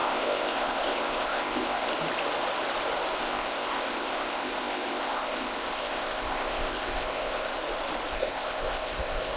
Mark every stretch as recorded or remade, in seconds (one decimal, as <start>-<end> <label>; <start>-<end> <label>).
0.0-1.9 remade; 1.9-3.2 recorded; 3.2-7.5 remade; 7.5-8.1 recorded; 8.1-9.4 remade